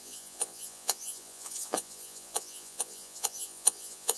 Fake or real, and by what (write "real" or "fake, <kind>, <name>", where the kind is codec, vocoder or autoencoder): fake, vocoder, Vocos